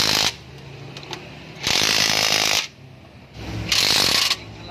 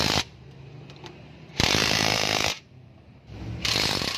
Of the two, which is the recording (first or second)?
first